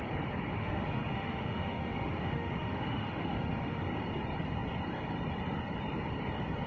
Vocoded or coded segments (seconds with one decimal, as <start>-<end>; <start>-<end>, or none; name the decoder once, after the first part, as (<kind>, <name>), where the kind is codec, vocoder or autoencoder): 0.5-3.8 (autoencoder, DAC-VAE)